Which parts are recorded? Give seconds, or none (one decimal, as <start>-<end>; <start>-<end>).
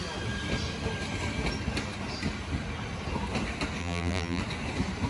0.0-3.8; 4.4-5.1